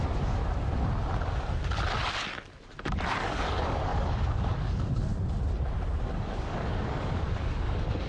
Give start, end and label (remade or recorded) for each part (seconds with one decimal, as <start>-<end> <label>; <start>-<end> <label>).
0.0-0.4 remade; 0.4-3.2 recorded; 3.2-5.1 remade; 5.1-6.0 recorded; 6.0-8.1 remade